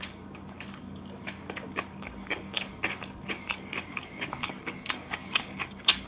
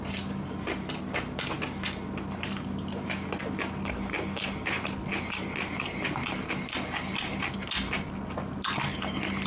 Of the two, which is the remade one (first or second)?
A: first